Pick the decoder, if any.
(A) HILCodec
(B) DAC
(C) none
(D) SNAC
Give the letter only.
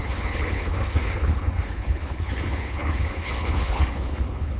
A